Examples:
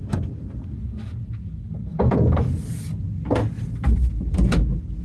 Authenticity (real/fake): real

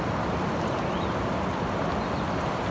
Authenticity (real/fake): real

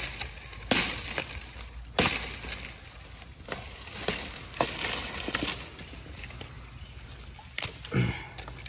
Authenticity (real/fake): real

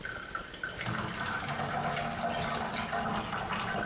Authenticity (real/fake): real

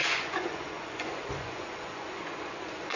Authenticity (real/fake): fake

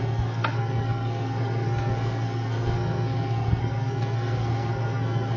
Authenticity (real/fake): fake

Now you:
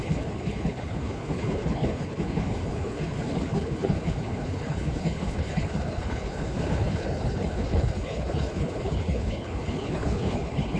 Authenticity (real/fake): fake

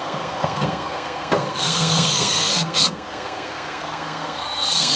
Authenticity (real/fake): fake